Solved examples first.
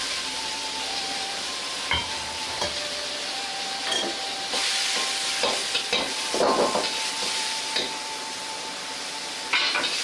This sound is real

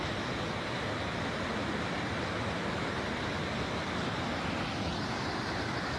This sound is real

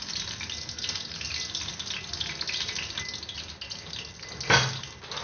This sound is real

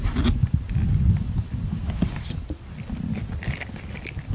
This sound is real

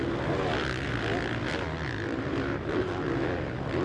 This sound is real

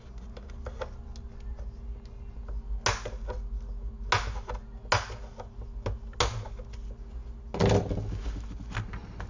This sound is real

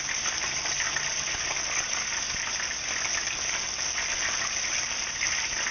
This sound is real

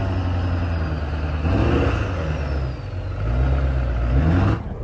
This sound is real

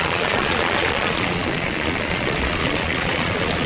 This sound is fake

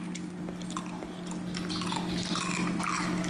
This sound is real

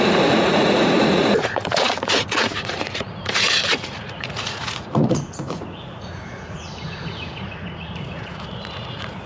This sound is fake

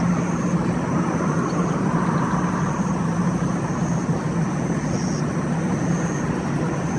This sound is real